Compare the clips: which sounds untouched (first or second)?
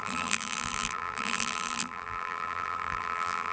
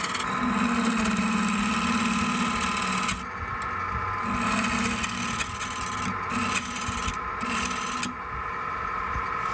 second